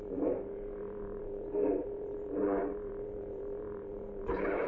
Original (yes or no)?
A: no